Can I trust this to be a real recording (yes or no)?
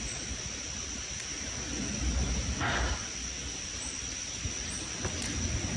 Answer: yes